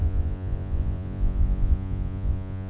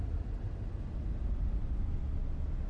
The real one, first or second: second